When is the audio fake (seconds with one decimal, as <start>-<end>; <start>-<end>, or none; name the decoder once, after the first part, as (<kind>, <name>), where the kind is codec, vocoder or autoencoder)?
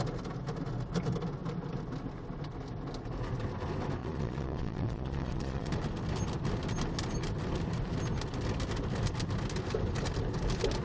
4.0-5.7 (vocoder, Vocos)